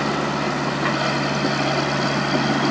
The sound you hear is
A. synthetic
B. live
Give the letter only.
B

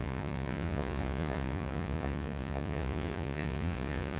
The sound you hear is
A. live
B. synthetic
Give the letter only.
B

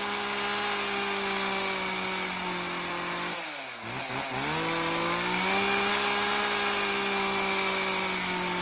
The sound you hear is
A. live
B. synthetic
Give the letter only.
A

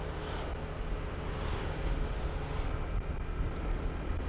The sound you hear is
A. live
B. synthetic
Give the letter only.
A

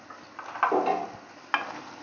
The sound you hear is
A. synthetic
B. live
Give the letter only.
B